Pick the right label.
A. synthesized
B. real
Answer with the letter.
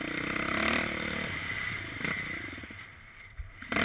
A